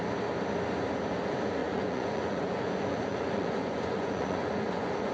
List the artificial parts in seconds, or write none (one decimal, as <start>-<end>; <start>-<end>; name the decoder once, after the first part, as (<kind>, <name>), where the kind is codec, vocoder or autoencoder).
1.6-5.1 (vocoder, Vocos)

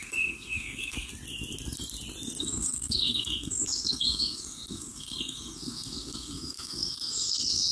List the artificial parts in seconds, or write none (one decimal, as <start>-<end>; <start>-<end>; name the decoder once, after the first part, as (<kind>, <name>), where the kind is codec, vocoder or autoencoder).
0.0-1.1 (codec, SNAC); 2.4-7.7

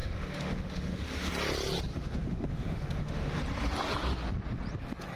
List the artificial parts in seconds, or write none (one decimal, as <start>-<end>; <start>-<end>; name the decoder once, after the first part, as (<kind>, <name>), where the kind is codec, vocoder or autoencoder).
0.0-1.3 (autoencoder, DAC-VAE); 1.9-3.4

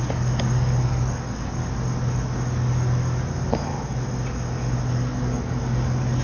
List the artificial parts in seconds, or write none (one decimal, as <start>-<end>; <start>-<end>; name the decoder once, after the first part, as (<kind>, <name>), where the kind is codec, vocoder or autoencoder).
0.0-1.6 (codec, DAC); 4.9-6.2

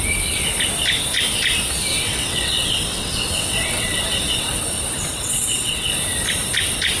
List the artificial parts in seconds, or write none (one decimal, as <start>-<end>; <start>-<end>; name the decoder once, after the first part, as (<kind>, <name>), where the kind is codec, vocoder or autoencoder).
1.9-4.6 (vocoder, WaveNeXt); 5.1-5.9

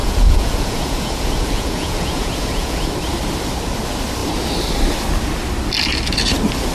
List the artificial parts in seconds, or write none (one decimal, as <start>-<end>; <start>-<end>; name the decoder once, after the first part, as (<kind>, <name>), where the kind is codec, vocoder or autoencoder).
0.0-2.9 (vocoder, Vocos)

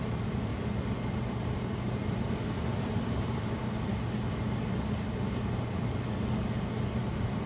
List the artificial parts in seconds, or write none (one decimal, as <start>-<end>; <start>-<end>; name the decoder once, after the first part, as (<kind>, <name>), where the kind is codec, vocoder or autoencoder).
0.0-0.5 (vocoder, BigVGAN v2); 1.1-2.0; 2.6-3.6; 7.0-7.5